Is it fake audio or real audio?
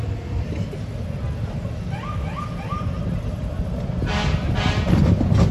real